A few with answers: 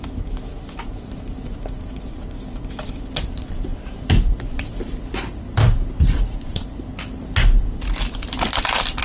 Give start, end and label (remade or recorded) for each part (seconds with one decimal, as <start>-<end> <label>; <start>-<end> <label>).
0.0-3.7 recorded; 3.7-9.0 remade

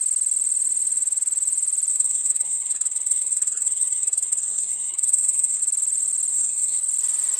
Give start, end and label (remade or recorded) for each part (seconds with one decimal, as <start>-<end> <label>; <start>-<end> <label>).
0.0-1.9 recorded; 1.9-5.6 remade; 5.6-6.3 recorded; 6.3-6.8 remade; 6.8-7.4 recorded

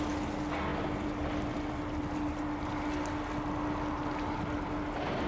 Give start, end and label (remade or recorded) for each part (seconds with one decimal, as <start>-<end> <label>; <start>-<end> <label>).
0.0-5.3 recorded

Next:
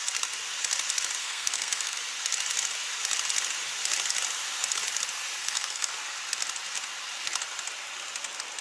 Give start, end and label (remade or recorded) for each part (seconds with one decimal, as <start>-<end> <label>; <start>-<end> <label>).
0.0-1.2 recorded; 1.2-2.0 remade; 2.0-5.4 recorded; 5.4-5.9 remade; 5.9-8.6 recorded

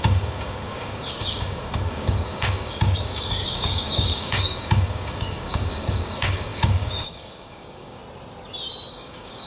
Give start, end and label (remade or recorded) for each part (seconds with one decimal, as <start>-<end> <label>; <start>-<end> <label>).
0.0-8.0 remade; 8.0-8.9 recorded; 8.9-9.5 remade

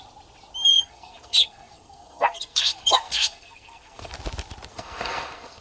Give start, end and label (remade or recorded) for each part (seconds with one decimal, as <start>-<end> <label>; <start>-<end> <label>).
0.0-0.7 recorded; 0.7-4.1 remade; 4.1-4.7 recorded; 4.7-5.6 remade

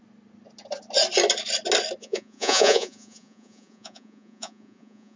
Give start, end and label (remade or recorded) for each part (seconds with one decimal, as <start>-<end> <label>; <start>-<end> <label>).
0.0-2.0 recorded; 2.0-5.2 remade